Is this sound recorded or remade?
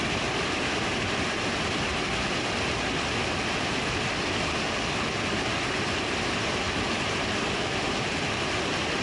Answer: recorded